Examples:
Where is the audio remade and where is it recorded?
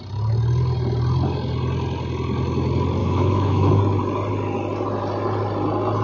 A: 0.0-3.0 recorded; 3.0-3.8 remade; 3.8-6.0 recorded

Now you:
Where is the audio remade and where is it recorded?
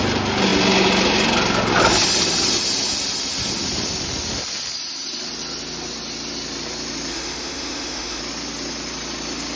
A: 0.0-7.1 recorded; 7.1-8.2 remade; 8.2-9.6 recorded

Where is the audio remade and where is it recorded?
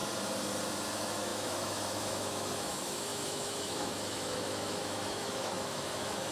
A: 0.0-0.9 recorded; 0.9-6.3 remade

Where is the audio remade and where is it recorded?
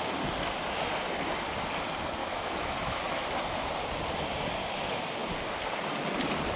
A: 0.0-2.2 recorded; 2.2-3.3 remade; 3.3-6.6 recorded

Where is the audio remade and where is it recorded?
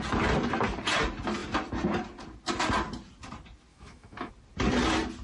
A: 0.0-3.7 recorded; 3.7-4.3 remade; 4.3-5.2 recorded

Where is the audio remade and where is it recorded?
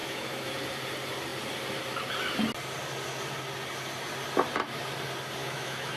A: 0.0-0.5 remade; 0.5-5.4 recorded; 5.4-6.0 remade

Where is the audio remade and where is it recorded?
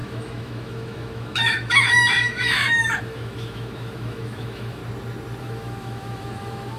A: 0.0-4.8 remade; 4.8-5.4 recorded; 5.4-6.8 remade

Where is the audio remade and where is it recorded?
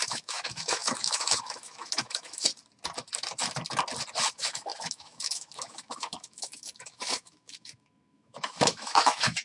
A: 0.0-2.5 remade; 2.5-4.3 recorded; 4.3-9.4 remade